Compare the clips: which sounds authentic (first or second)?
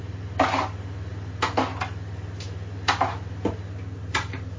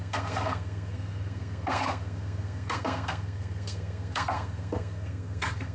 first